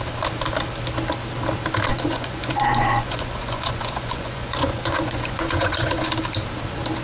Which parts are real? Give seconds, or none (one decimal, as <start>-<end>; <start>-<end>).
0.0-1.9; 6.1-7.0